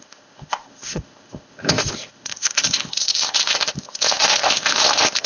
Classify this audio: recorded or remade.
remade